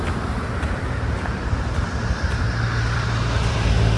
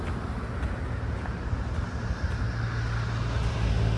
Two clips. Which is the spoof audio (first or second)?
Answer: first